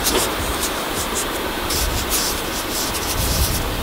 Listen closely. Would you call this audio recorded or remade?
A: remade